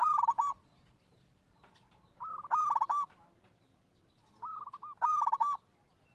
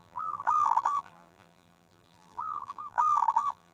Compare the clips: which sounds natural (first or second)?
first